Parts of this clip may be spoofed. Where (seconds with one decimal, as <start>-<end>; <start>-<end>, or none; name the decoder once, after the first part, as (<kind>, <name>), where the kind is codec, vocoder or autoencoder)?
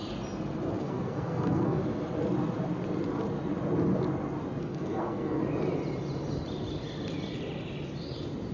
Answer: 0.8-1.8 (codec, SNAC); 4.6-5.4